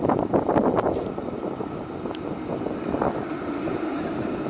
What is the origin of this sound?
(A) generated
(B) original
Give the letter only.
B